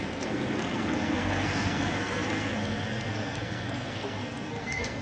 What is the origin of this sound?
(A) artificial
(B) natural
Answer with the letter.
A